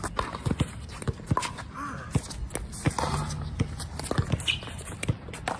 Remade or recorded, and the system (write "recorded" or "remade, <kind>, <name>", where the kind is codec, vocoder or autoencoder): recorded